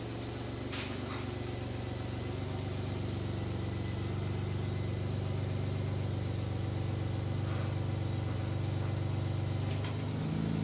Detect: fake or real real